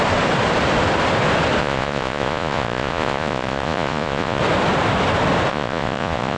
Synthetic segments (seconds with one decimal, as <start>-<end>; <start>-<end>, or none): 1.6-4.4; 5.5-6.4